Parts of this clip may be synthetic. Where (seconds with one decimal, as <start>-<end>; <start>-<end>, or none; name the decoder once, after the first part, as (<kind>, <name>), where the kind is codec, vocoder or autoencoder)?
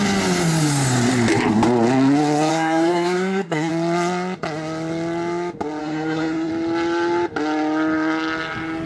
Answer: 2.5-3.7 (codec, SNAC); 5.8-6.5